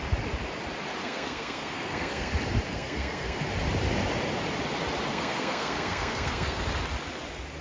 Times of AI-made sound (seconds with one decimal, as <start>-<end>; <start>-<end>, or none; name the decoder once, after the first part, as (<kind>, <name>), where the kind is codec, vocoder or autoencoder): 1.0-2.3 (codec, SNAC); 2.7-3.4; 5.1-6.6